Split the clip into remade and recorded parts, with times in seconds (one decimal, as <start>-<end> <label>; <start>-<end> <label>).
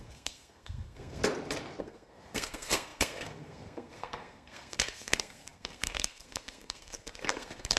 0.0-1.2 remade; 1.2-1.8 recorded; 1.8-7.8 remade